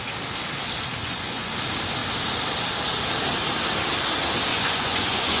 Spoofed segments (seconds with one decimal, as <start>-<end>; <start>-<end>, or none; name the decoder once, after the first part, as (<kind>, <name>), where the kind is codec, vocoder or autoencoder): 1.0-1.5 (vocoder, Vocos); 4.5-5.4